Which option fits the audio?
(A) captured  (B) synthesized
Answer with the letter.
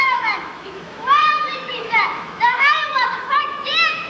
B